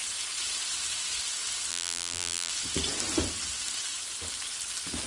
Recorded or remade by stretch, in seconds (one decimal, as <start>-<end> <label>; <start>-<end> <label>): 0.0-1.7 recorded; 1.7-2.5 remade; 2.5-5.1 recorded